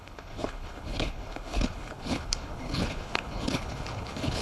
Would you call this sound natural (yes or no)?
no